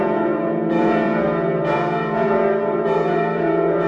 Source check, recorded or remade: remade